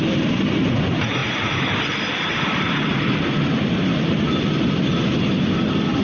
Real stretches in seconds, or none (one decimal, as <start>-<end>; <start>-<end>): 0.0-1.2; 4.8-6.0